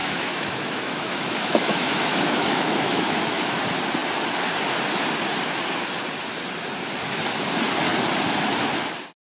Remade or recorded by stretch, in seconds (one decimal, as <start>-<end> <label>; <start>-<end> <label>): 0.0-3.6 remade; 3.6-9.3 recorded